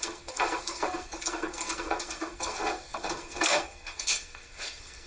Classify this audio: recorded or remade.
remade